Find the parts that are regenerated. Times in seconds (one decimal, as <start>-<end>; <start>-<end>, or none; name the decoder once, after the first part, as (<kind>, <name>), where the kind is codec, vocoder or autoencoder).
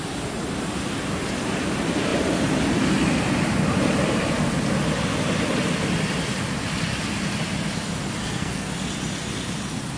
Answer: 8.2-8.7 (codec, SNAC)